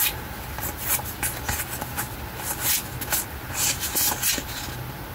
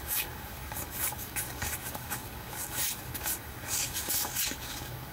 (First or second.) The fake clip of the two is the second